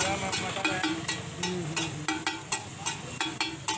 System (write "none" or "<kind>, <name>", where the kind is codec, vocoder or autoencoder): none